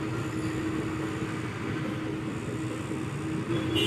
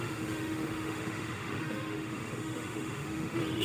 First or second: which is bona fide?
first